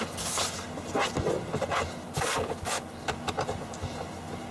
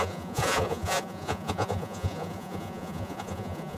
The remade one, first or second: second